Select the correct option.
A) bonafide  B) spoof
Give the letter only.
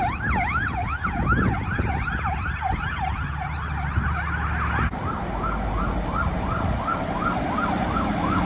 A